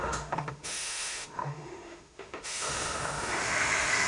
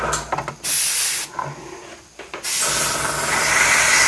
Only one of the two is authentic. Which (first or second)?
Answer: second